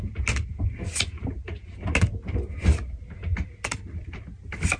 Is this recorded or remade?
recorded